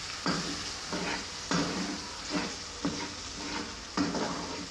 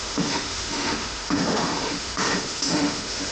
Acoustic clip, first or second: first